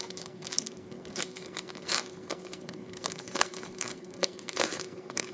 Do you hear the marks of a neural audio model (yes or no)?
yes